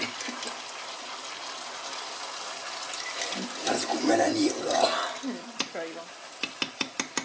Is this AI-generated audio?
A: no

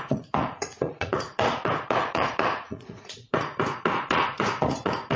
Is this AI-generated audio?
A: yes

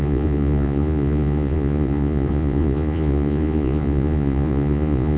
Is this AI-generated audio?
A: yes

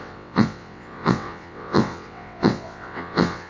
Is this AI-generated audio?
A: yes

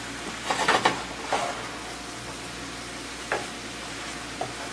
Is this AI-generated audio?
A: no